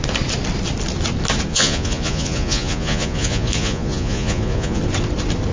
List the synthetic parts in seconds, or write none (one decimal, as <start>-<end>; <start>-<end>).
1.5-4.8